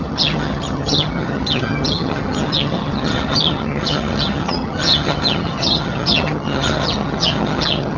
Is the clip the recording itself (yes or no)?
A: no